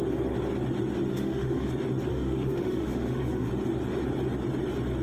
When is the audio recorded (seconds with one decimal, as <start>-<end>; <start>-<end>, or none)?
0.0-1.1; 1.7-2.1; 3.5-5.0